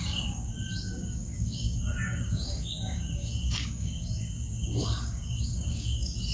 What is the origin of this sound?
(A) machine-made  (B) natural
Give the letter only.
A